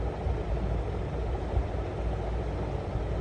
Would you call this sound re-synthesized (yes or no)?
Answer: no